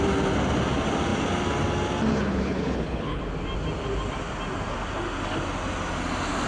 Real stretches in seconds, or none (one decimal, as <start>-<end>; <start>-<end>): 0.0-2.1; 3.2-6.5